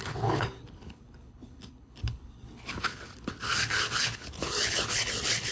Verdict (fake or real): fake